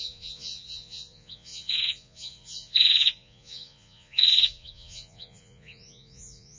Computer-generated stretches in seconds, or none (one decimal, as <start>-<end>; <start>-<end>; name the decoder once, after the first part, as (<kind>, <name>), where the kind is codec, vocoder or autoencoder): 0.0-6.6 (vocoder, Vocos)